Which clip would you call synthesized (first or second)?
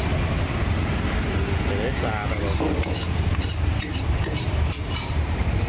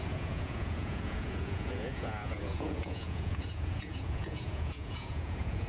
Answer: second